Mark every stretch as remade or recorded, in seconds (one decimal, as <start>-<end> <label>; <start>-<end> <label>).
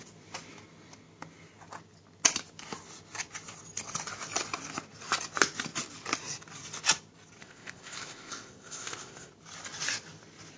0.0-7.4 recorded; 7.4-9.3 remade; 9.3-10.6 recorded